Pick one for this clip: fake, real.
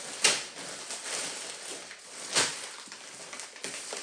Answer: real